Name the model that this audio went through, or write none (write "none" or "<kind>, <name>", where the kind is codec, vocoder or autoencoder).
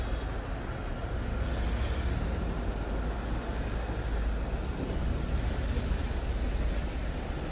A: none